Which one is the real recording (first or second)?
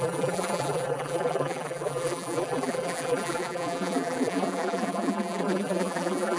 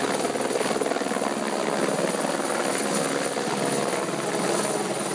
second